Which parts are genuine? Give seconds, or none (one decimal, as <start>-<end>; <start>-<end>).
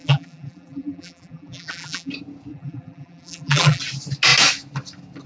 2.1-2.5; 3.8-5.3